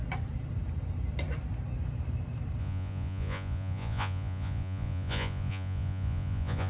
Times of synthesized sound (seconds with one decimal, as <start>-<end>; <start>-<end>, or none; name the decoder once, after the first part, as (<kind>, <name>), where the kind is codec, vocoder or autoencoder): 2.6-6.7 (vocoder, Vocos)

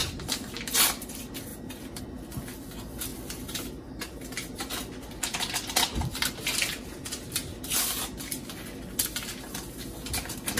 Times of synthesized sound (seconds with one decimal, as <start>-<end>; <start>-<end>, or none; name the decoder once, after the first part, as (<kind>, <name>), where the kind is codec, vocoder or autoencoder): 0.0-1.1 (vocoder, BigVGAN v2); 3.1-7.6

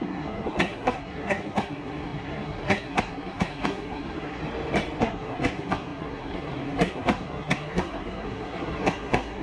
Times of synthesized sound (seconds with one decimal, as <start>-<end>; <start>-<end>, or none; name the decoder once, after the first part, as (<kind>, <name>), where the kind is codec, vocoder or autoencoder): 0.0-4.4 (codec, SNAC); 5.0-9.4

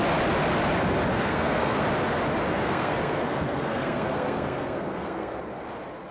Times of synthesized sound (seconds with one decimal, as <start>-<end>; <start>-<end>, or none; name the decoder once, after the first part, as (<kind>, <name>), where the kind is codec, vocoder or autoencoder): 1.1-1.8 (codec, SNAC); 2.5-5.4

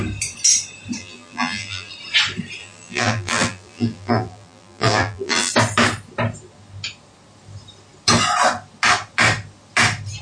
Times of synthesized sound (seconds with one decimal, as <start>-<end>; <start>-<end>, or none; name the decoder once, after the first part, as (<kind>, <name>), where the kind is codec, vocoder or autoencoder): 1.0-1.9 (vocoder, BigVGAN v2); 2.6-5.5

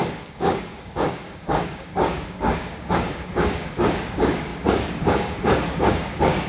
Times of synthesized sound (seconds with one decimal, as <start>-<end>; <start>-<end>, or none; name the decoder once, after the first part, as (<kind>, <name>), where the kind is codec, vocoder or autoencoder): 0.0-6.5 (codec, DAC)